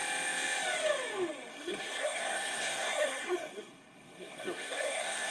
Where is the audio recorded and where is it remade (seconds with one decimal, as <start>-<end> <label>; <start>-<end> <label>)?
0.0-1.5 recorded; 1.5-5.3 remade